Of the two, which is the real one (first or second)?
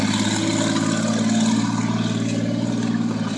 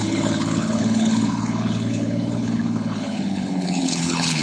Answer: first